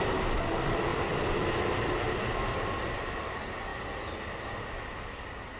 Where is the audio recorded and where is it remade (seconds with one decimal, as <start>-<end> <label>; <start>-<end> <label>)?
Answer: 0.0-0.9 recorded; 0.9-3.1 remade; 3.1-5.6 recorded